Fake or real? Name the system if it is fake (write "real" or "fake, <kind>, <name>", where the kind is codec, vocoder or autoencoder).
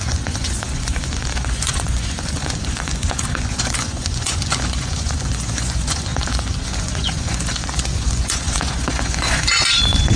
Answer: fake, vocoder, Vocos